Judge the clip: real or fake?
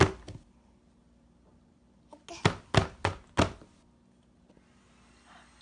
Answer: real